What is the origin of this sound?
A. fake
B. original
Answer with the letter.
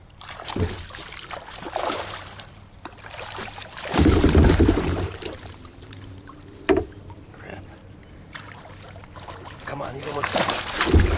A